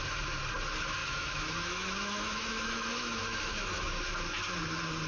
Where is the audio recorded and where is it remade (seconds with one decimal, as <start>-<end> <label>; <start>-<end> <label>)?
0.0-1.0 recorded; 1.0-4.1 remade; 4.1-5.1 recorded